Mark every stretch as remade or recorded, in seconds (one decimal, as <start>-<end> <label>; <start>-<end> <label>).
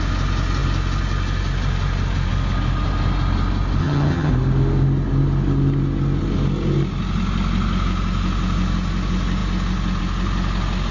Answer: 0.0-3.8 recorded; 3.8-4.3 remade; 4.3-10.9 recorded